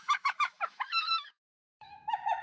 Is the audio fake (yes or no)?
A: yes